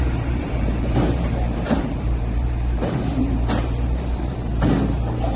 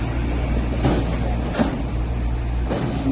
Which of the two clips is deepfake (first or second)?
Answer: first